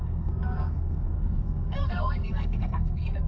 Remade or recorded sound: remade